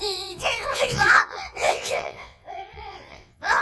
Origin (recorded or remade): remade